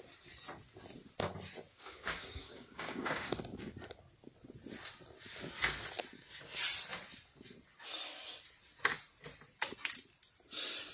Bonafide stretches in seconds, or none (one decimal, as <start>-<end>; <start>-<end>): 0.0-1.7; 3.3-10.9